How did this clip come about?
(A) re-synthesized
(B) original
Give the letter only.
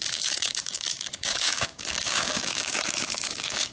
A